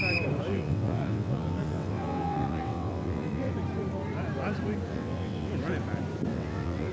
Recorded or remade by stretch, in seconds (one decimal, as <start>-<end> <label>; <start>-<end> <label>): 0.0-0.5 recorded; 0.5-3.5 remade; 3.5-4.9 recorded; 4.9-5.5 remade; 5.5-6.3 recorded; 6.3-6.9 remade